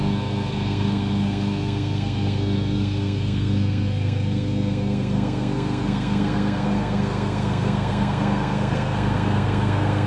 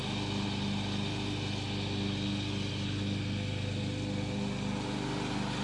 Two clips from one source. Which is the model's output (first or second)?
first